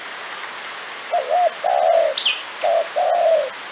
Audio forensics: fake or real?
real